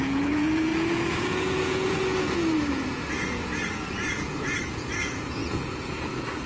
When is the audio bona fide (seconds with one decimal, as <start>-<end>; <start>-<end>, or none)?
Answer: none